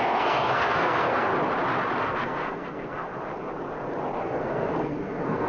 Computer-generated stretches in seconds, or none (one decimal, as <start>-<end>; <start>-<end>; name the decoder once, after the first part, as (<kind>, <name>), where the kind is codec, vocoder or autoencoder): 0.0-1.3 (codec, SNAC); 2.0-3.1; 4.2-5.5